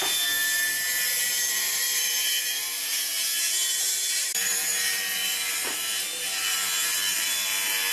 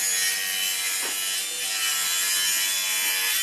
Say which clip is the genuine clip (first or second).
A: second